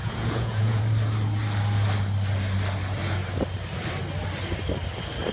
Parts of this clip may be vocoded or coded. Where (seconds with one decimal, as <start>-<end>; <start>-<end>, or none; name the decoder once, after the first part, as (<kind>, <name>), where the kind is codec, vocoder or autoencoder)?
0.0-0.8 (vocoder, Vocos)